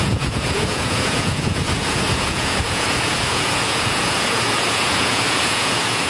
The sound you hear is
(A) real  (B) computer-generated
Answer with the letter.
B